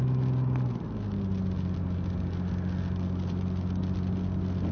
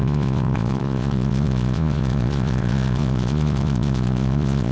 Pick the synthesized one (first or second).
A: second